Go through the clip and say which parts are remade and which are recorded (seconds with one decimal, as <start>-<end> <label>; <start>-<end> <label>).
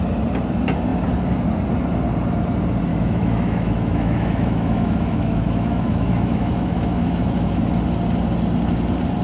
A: 0.0-2.9 recorded; 2.9-7.6 remade; 7.6-9.2 recorded